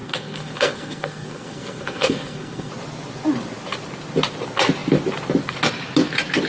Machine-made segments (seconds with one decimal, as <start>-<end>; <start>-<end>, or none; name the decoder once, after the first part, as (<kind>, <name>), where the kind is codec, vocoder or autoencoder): 0.0-2.7 (codec, SNAC)